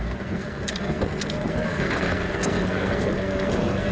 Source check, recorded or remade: remade